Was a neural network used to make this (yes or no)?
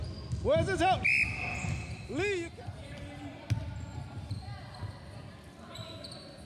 no